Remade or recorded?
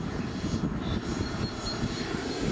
recorded